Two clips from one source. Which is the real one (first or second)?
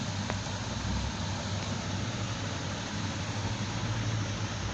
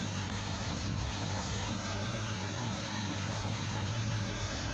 first